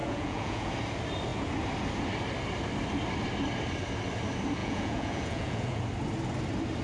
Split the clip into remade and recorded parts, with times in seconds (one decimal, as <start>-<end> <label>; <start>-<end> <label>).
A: 0.0-0.7 remade; 0.7-4.6 recorded; 4.6-5.8 remade; 5.8-6.8 recorded